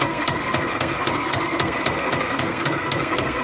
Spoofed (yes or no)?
yes